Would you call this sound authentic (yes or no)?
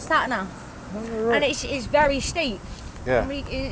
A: yes